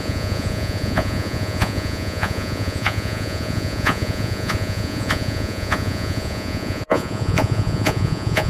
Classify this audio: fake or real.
fake